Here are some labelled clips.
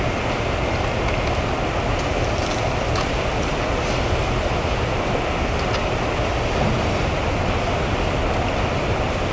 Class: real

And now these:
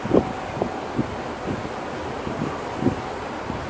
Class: real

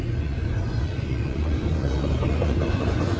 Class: fake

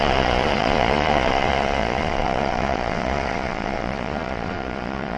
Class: fake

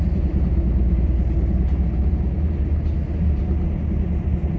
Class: real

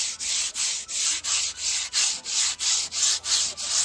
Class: real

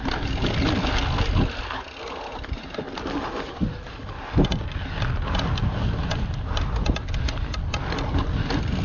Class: real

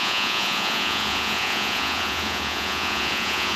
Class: fake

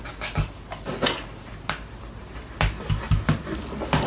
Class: real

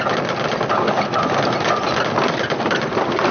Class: real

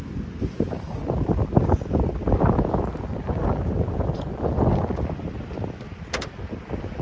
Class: real